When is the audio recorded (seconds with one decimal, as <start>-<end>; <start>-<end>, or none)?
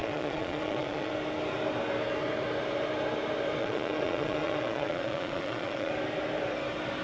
1.1-3.6; 5.9-7.0